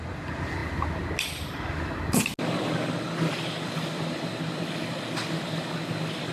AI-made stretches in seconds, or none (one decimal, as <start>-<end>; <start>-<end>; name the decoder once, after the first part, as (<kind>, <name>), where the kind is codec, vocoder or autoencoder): none